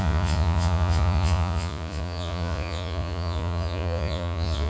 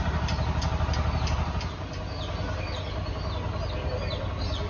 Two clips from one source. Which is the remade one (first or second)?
first